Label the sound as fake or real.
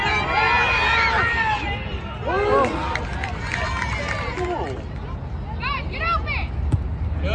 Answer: real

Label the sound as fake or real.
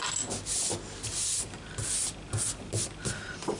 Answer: real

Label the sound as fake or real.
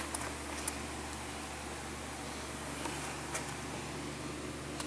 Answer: real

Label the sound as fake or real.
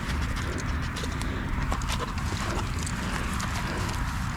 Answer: real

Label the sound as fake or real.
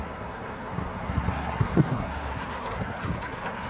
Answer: fake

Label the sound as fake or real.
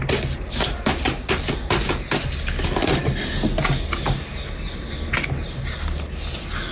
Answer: real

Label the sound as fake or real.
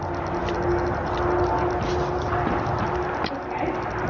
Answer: real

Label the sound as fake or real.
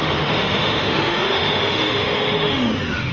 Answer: fake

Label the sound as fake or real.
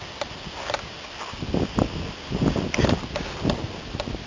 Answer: real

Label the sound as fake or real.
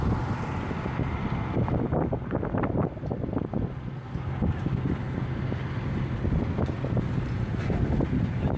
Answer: real